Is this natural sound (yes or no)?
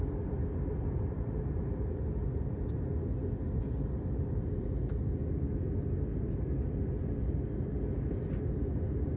yes